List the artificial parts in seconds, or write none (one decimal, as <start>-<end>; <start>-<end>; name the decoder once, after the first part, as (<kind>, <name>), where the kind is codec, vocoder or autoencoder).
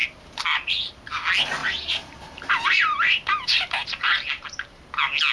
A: 0.0-1.0 (vocoder, BigVGAN v2); 1.6-4.8